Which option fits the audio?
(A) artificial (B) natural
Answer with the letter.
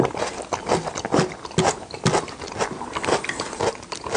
B